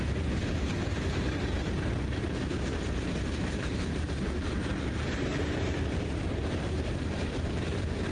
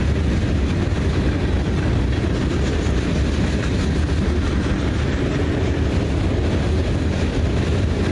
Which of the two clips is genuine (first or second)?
second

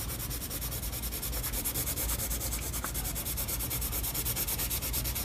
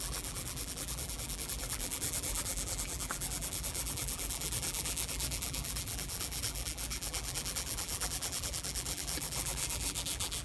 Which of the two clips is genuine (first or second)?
first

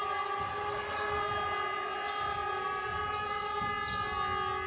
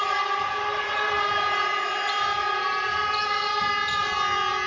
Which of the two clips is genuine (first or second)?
first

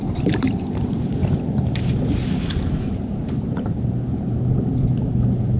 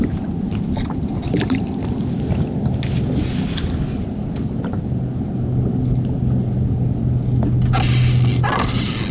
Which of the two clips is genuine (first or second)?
second